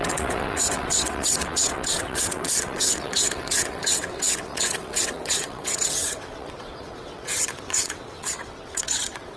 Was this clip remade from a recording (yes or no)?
yes